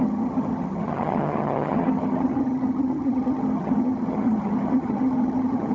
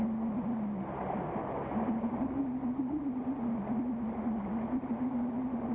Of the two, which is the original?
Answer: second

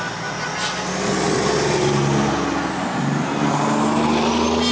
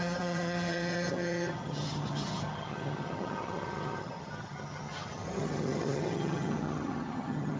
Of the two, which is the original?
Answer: first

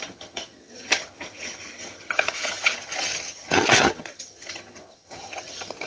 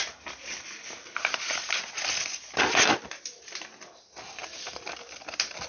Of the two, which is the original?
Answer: second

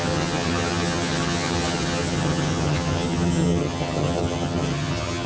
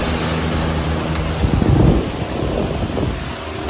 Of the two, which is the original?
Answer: second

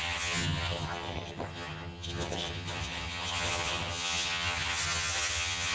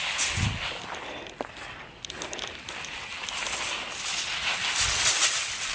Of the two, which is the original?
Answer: second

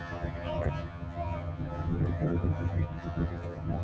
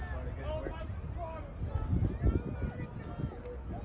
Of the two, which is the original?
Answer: second